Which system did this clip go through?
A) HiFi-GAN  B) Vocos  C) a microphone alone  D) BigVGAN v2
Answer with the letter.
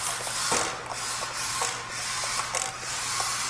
C